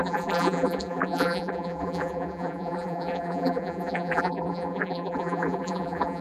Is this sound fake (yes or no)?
yes